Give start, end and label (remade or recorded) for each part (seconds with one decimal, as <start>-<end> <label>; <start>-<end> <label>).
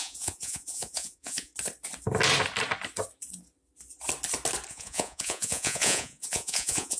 0.0-1.5 remade; 1.5-4.7 recorded; 4.7-7.0 remade